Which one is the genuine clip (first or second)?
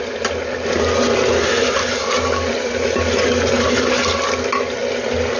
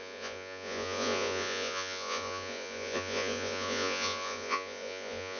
first